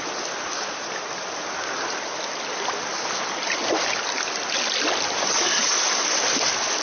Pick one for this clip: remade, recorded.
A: recorded